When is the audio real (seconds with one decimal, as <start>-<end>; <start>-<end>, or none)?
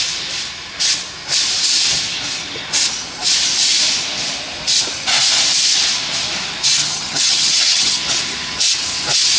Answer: 0.0-6.8; 8.0-9.4